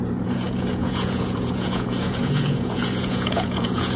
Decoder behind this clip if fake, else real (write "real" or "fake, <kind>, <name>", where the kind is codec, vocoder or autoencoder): fake, vocoder, Vocos